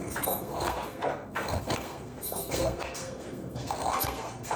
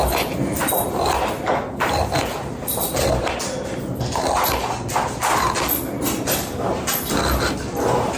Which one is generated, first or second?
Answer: first